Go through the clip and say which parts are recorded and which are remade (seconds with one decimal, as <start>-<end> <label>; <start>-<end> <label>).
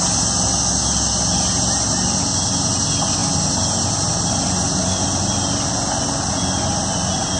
0.0-7.4 recorded